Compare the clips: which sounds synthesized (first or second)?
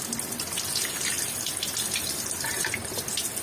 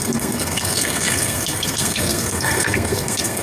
second